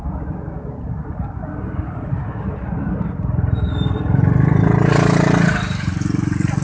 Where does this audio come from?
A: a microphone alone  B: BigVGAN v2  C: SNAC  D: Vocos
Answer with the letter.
A